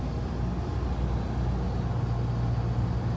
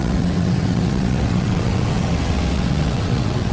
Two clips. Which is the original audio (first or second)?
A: first